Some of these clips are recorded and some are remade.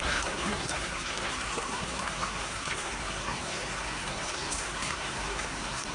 remade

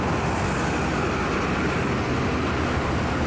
recorded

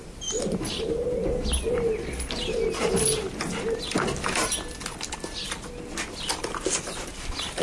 recorded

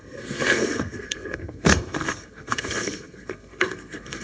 remade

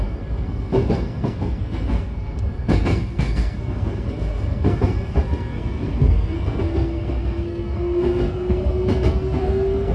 remade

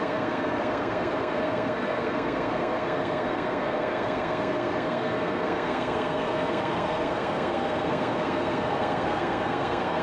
remade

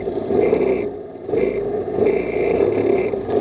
recorded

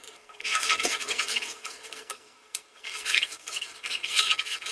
remade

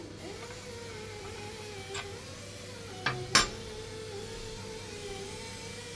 recorded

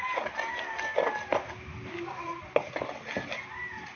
recorded